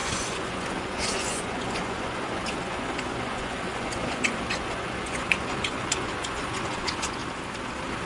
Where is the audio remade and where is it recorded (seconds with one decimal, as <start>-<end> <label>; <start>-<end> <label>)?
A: 0.0-7.2 remade; 7.2-8.1 recorded